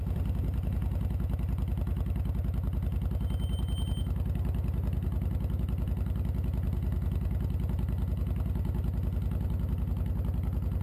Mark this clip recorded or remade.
recorded